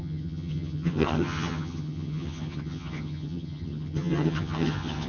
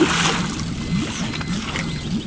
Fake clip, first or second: first